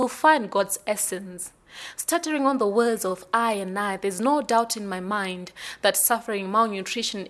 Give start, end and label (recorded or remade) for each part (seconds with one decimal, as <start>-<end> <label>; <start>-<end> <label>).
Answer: 0.0-7.3 recorded